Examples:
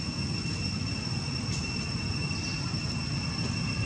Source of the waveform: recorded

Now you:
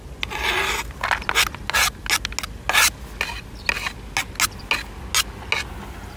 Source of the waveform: recorded